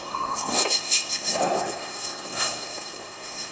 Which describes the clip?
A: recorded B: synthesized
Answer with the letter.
B